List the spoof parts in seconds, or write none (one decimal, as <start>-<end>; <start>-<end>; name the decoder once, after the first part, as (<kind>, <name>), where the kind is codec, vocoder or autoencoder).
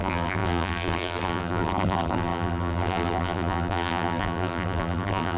0.0-5.4 (vocoder, BigVGAN v2)